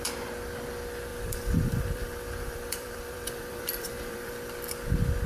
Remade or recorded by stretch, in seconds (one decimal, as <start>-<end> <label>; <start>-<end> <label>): 0.0-1.1 recorded; 1.1-4.3 remade; 4.3-5.3 recorded

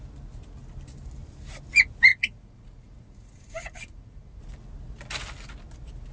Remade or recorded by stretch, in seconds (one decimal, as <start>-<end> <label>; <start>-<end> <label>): 0.0-2.1 recorded; 2.1-4.4 remade; 4.4-6.1 recorded